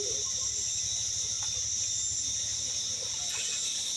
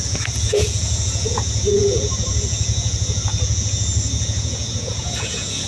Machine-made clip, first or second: second